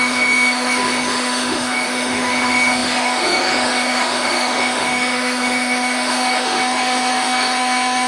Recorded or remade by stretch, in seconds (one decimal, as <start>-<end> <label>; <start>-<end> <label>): 0.0-8.1 remade